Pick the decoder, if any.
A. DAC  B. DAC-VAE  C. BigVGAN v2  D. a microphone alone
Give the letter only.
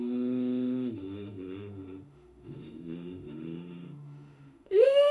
B